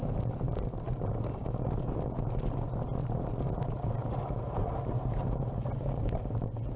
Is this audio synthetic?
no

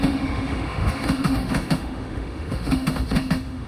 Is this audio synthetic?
yes